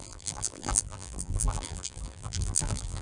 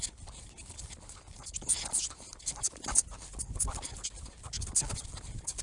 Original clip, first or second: second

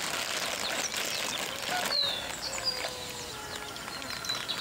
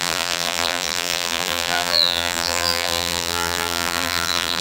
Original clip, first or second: first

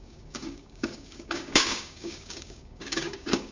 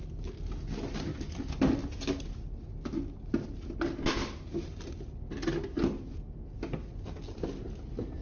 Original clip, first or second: second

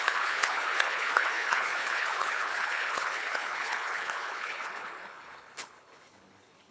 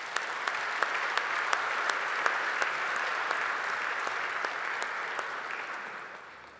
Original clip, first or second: second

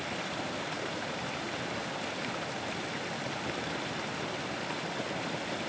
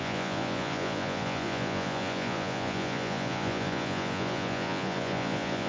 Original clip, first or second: first